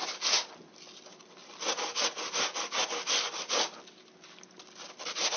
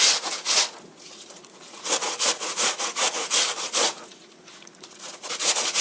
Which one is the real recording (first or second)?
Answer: first